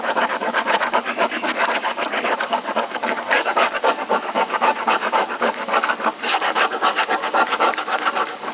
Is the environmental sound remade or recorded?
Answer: remade